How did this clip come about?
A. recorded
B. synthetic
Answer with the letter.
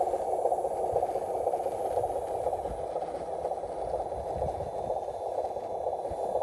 A